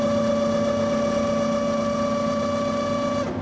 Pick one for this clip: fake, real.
real